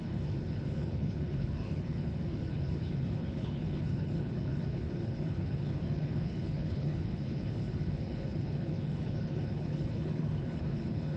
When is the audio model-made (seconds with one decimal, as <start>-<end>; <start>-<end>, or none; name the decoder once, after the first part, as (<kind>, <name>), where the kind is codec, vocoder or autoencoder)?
0.0-11.2 (codec, HILCodec)